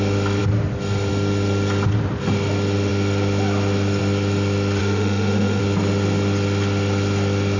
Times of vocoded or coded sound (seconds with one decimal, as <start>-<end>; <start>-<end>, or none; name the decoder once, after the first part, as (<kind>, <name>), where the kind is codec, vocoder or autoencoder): 4.8-5.6 (autoencoder, DAC-VAE)